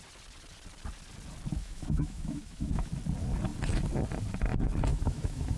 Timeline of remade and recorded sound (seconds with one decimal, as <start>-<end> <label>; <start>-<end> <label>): 0.0-1.6 recorded; 1.6-2.9 remade; 2.9-4.9 recorded; 4.9-5.6 remade

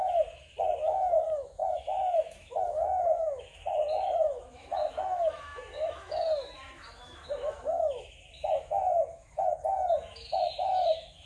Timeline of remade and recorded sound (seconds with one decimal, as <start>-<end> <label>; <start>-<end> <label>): 0.0-11.3 remade

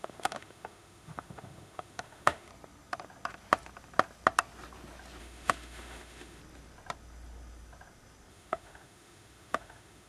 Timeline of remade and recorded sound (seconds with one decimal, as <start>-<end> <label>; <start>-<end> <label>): 0.0-2.5 remade; 2.5-5.2 recorded; 5.2-6.4 remade; 6.4-8.3 recorded; 8.3-10.1 remade